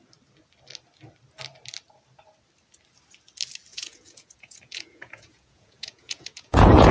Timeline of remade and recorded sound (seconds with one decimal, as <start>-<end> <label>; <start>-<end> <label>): 0.0-3.7 recorded; 3.7-6.9 remade